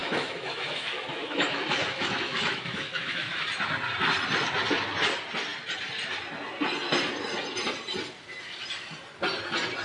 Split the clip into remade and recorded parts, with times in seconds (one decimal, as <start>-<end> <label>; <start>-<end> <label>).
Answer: 0.0-3.4 remade; 3.4-9.8 recorded